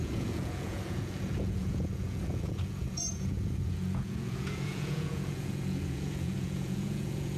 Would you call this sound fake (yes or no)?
yes